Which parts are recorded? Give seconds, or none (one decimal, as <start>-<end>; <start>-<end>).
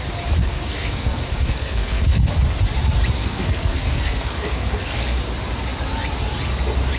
0.0-0.4; 2.3-3.2; 5.2-7.0